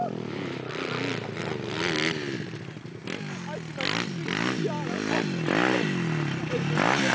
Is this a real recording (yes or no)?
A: yes